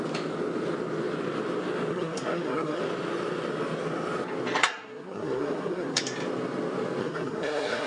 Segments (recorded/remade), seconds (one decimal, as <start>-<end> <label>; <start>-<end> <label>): 0.0-1.9 recorded; 1.9-2.8 remade; 2.8-4.6 recorded; 4.6-6.0 remade; 6.0-7.0 recorded; 7.0-7.9 remade